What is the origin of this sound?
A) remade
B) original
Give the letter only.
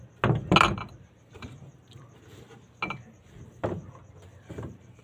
B